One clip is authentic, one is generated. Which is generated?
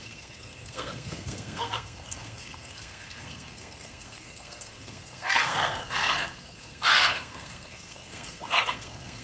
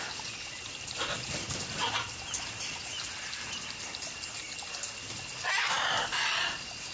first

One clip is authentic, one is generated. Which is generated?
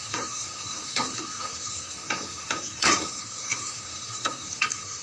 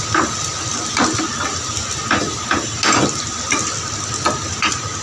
first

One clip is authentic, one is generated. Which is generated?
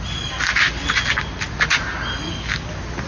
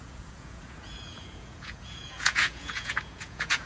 second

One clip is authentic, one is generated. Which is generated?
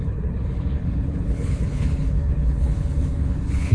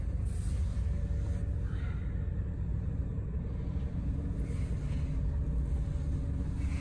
first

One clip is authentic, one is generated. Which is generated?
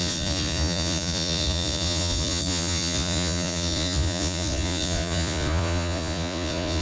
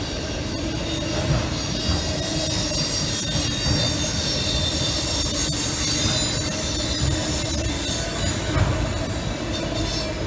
first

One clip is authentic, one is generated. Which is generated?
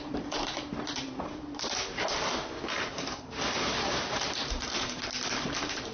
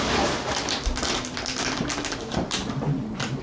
first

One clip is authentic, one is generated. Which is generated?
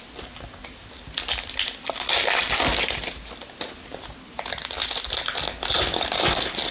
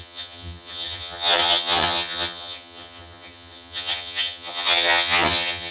second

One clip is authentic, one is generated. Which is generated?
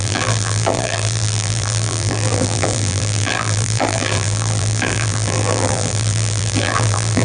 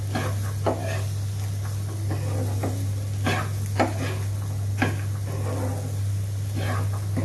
first